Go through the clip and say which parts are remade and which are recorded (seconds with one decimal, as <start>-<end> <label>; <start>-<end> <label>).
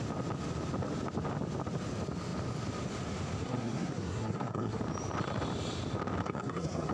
0.0-3.4 recorded; 3.4-4.8 remade; 4.8-6.2 recorded; 6.2-6.9 remade